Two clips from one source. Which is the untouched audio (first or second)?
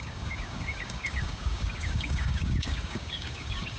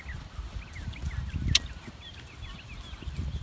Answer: second